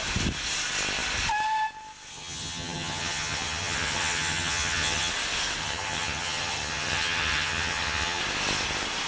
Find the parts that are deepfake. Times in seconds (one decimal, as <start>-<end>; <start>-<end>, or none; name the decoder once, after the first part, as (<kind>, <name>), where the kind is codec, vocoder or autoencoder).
2.1-5.1 (vocoder, HiFi-GAN); 5.6-8.2